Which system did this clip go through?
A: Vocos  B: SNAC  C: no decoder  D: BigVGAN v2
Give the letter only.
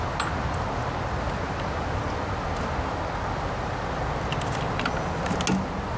C